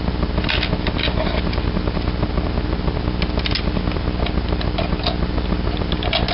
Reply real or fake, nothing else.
real